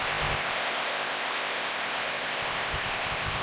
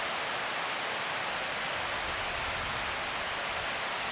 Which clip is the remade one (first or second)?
first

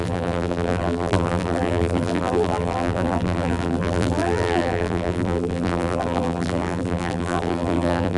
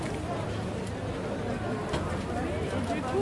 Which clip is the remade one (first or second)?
first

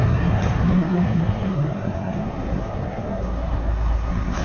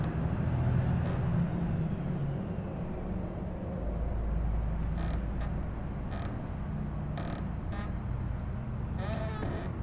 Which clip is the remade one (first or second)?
first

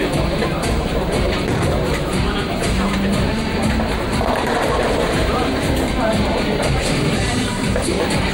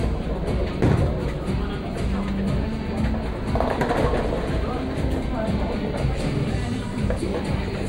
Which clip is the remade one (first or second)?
first